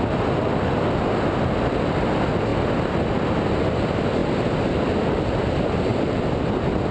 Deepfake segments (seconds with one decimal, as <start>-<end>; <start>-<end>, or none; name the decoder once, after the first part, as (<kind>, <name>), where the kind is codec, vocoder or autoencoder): none